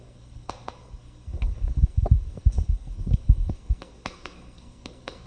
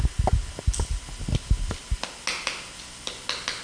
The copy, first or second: first